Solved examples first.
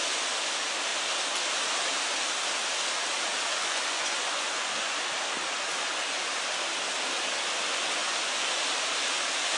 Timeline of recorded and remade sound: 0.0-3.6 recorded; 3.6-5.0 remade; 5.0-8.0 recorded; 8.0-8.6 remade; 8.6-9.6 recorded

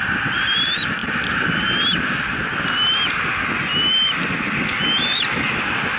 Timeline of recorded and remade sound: 0.0-6.0 recorded

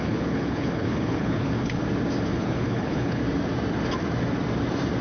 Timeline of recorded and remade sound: 0.0-1.8 remade; 1.8-2.3 recorded; 2.3-3.2 remade; 3.2-5.0 recorded